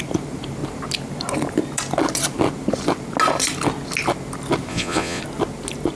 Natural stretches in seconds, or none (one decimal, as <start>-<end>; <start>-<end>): 0.0-4.7; 5.2-5.9